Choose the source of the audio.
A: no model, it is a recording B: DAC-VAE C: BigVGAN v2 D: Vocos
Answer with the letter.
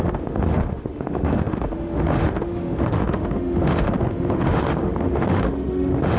B